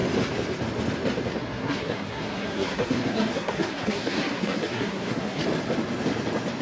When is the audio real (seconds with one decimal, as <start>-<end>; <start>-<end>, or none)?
0.0-1.4; 5.4-6.6